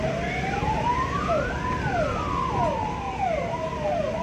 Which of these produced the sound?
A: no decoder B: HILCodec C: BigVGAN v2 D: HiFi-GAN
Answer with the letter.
A